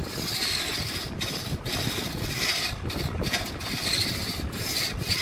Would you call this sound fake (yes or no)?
no